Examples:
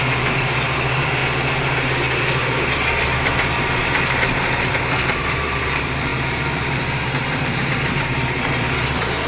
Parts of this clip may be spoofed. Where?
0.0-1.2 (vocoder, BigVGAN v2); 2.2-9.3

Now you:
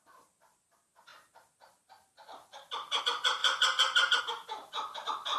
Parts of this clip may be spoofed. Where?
none

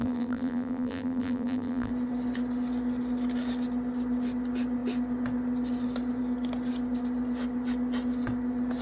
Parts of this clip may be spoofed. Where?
0.0-1.9 (vocoder, BigVGAN v2)

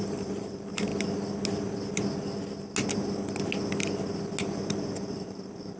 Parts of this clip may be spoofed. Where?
0.0-0.9 (vocoder, BigVGAN v2); 4.4-5.8